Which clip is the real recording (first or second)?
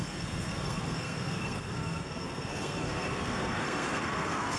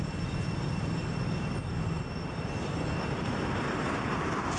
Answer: second